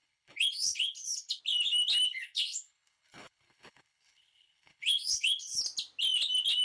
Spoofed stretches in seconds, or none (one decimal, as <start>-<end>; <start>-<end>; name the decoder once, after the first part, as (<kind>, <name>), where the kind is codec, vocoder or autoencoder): 0.0-1.4 (codec, HILCodec); 2.1-5.6